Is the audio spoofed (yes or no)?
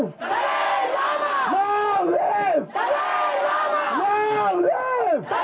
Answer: no